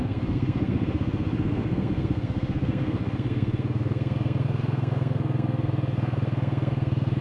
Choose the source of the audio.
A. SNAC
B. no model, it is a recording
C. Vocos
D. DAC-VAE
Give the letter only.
A